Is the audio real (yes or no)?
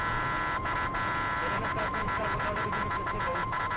no